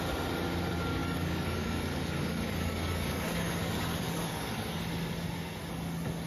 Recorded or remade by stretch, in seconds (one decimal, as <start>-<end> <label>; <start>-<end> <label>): 0.0-1.0 recorded; 1.0-4.8 remade; 4.8-6.3 recorded